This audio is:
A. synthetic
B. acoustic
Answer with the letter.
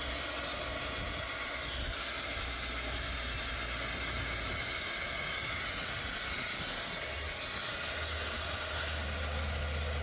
B